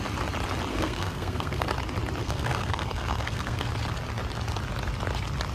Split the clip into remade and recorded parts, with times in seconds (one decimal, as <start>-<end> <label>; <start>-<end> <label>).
0.0-0.7 recorded; 0.7-1.7 remade; 1.7-2.2 recorded; 2.2-3.7 remade; 3.7-5.5 recorded